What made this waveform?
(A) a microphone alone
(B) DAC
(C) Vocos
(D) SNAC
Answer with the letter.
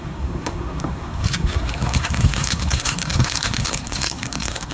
D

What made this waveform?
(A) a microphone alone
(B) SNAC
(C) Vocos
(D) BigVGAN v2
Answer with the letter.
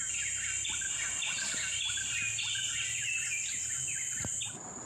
A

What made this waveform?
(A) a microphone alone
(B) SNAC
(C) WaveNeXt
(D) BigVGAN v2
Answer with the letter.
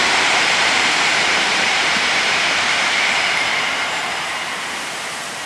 D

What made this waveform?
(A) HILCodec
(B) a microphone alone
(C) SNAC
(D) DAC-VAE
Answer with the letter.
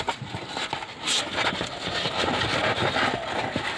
B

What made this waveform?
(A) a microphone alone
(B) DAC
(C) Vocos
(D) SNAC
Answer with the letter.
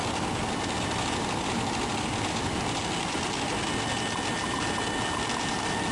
A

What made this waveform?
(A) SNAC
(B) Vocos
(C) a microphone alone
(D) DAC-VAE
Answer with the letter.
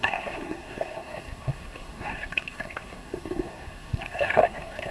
A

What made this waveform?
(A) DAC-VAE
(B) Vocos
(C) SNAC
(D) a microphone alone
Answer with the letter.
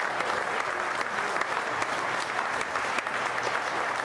D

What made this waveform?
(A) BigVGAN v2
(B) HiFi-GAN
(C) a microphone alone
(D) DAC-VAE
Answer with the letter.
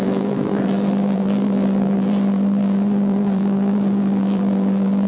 A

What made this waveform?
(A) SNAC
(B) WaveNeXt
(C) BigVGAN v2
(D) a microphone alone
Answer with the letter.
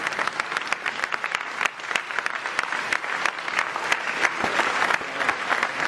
D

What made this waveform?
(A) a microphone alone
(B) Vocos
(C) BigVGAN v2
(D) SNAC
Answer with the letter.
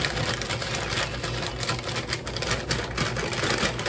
A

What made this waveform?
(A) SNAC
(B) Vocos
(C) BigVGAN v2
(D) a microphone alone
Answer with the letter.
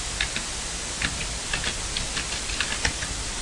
D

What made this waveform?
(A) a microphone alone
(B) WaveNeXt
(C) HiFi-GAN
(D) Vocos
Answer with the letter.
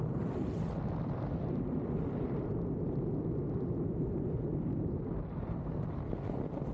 A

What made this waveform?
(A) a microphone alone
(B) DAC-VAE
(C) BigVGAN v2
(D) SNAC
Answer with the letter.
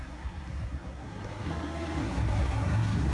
D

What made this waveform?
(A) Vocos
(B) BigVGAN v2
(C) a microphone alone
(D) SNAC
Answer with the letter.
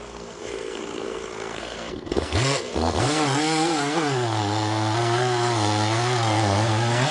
D